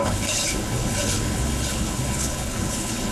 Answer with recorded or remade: remade